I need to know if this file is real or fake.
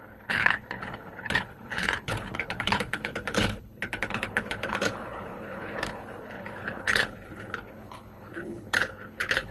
fake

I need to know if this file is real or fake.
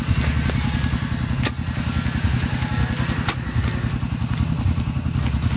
real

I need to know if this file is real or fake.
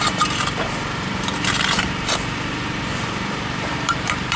fake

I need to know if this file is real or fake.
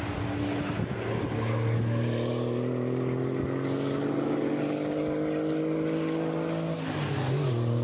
real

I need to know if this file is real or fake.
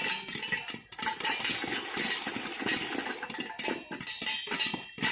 real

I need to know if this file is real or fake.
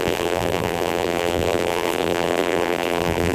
fake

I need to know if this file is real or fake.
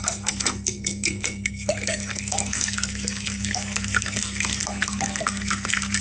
fake